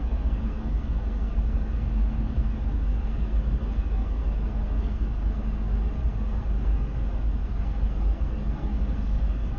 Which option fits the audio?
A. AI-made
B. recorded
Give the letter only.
A